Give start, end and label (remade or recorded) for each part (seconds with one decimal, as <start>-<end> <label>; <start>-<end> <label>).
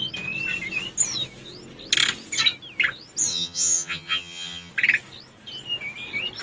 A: 0.0-3.3 recorded; 3.3-4.7 remade; 4.7-6.4 recorded